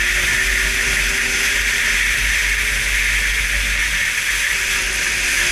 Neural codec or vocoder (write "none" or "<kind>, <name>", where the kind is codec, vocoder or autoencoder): none